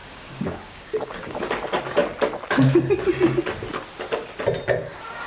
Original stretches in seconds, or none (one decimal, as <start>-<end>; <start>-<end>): 1.4-5.3

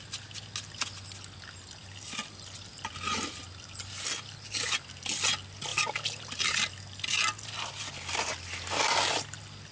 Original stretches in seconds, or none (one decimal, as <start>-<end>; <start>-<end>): 0.0-9.7

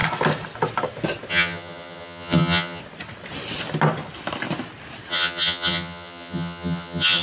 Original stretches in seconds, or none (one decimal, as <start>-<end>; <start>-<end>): 0.0-1.3; 2.8-5.1

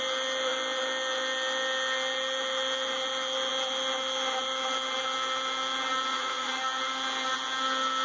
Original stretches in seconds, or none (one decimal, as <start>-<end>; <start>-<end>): 0.0-6.1; 6.6-8.0

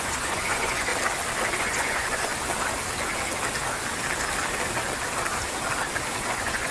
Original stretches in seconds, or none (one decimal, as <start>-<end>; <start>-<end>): 0.9-1.6; 2.3-6.3